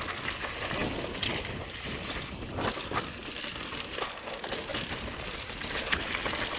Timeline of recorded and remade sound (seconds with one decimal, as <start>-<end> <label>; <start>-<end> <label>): 0.0-6.6 recorded